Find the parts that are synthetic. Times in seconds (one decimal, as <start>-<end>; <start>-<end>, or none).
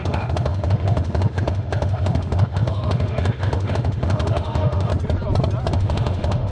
0.0-4.9; 5.7-6.5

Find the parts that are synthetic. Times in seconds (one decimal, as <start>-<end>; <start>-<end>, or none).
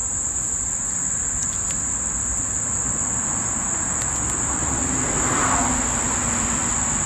none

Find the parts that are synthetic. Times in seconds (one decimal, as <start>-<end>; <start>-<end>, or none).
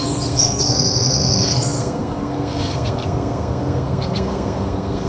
0.0-5.1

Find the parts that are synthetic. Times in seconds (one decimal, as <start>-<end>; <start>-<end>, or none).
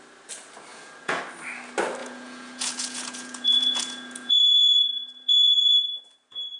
0.7-1.2; 2.0-6.0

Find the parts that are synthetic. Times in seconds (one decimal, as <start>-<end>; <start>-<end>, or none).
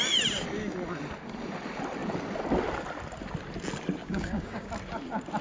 4.0-4.7